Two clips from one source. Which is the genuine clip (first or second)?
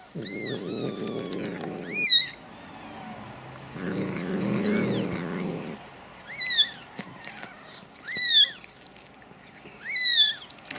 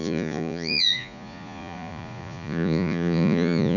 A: first